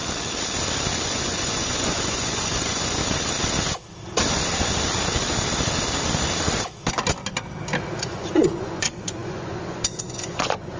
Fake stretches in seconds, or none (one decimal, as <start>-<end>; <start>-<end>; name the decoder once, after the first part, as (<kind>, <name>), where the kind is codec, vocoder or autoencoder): 1.0-3.0 (vocoder, Vocos); 8.0-10.8